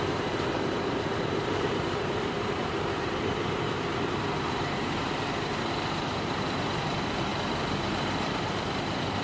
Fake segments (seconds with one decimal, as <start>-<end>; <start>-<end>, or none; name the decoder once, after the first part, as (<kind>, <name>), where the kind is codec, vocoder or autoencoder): 0.0-7.3 (vocoder, BigVGAN v2); 7.9-9.2

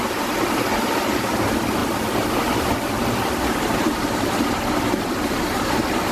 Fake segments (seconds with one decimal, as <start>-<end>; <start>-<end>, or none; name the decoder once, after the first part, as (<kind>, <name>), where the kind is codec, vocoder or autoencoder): none

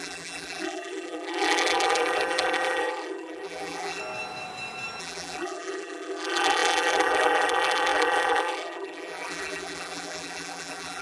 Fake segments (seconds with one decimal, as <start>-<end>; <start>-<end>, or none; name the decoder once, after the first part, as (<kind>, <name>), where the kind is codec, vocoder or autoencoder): 0.0-4.0 (vocoder, BigVGAN v2); 5.0-11.0

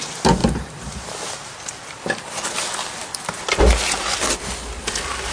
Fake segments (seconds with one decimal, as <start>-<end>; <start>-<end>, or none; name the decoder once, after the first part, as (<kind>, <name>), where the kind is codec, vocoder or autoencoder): 0.4-3.6 (vocoder, BigVGAN v2)

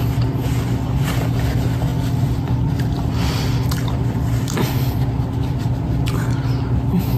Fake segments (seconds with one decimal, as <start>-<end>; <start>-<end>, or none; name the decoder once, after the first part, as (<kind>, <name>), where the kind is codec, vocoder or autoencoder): 1.9-6.1 (vocoder, BigVGAN v2)

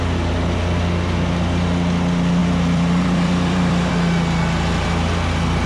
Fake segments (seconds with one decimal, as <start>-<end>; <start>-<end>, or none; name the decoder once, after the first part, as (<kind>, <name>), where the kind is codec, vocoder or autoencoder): 2.4-3.9 (vocoder, BigVGAN v2)

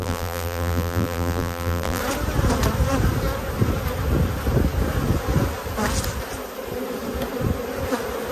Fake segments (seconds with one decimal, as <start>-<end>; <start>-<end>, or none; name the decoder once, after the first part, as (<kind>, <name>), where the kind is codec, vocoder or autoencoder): 0.0-2.0 (vocoder, BigVGAN v2)

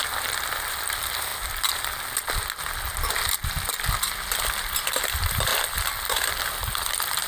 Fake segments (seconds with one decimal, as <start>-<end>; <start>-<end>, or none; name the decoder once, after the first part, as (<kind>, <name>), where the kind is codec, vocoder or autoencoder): 0.0-1.3 (vocoder, BigVGAN v2); 4.4-5.5; 6.3-7.3